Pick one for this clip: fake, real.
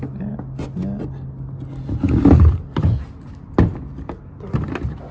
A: real